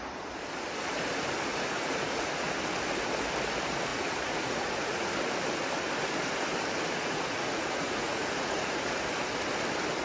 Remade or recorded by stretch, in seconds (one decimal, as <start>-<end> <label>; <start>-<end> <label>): 0.0-1.5 recorded; 1.5-2.3 remade; 2.3-3.9 recorded; 3.9-5.1 remade; 5.1-6.9 recorded; 6.9-9.0 remade; 9.0-10.0 recorded